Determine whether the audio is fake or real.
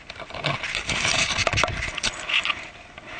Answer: real